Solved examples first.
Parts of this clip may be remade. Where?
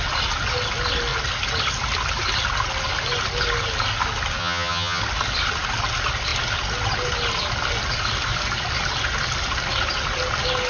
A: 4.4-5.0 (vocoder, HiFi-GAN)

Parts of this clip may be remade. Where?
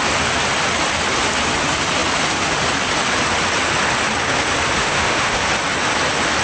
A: 4.8-5.4 (autoencoder, DAC-VAE)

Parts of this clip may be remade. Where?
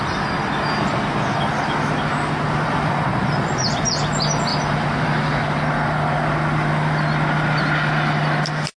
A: none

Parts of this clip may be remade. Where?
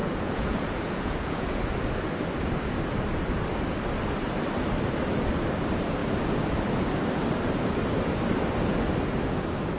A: 0.0-1.6 (vocoder, Vocos)